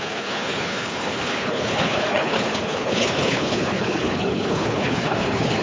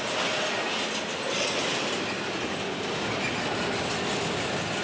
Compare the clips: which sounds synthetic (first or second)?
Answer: first